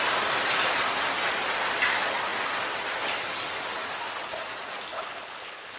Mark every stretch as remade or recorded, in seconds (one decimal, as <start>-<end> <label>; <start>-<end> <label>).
0.0-4.9 recorded; 4.9-5.8 remade